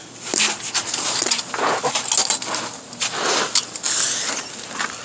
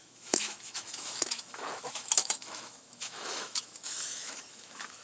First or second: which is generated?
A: second